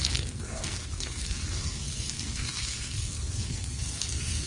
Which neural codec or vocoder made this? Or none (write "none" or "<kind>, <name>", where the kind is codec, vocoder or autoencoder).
codec, SNAC